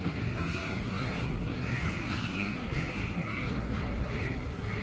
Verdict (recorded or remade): remade